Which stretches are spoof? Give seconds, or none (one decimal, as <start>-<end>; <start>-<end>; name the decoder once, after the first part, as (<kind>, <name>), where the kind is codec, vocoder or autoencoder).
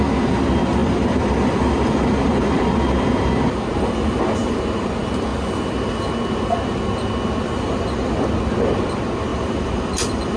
0.8-2.6 (vocoder, BigVGAN v2); 9.3-10.4